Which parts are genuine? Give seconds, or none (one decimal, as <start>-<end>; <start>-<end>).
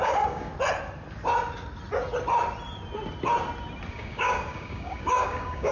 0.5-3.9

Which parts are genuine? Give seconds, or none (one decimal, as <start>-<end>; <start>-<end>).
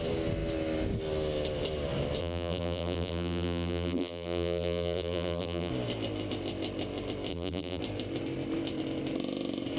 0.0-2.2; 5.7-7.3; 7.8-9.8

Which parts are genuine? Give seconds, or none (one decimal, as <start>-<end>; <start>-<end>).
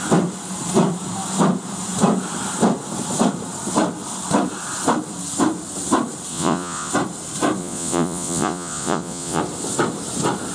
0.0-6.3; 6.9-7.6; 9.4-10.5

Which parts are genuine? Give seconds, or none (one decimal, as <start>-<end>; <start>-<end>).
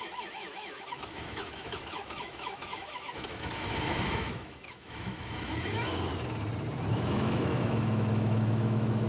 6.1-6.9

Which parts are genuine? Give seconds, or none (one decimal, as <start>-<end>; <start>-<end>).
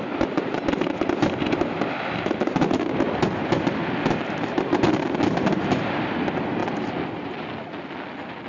0.0-8.5